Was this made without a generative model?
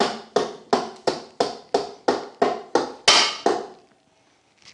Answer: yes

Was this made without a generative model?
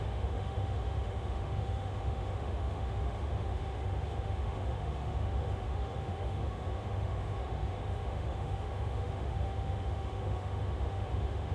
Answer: no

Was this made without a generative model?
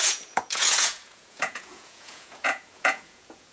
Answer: no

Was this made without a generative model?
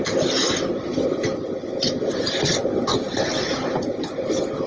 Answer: yes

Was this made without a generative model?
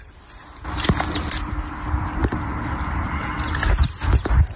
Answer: yes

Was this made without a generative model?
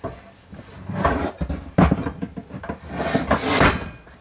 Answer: no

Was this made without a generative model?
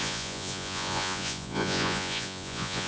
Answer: no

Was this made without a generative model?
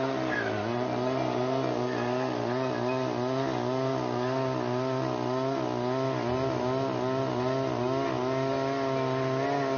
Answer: yes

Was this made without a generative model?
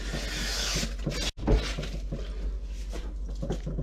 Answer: yes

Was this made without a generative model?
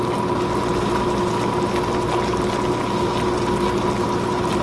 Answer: yes